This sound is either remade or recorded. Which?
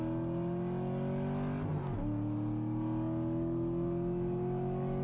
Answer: recorded